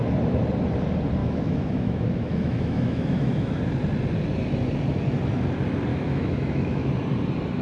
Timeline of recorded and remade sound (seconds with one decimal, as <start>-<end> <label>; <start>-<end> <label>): 0.0-1.2 recorded; 1.2-3.6 remade; 3.6-5.9 recorded; 5.9-6.9 remade; 6.9-7.6 recorded